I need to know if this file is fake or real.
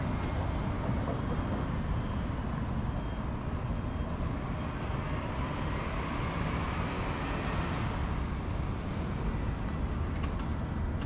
real